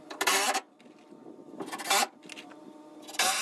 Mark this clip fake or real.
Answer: real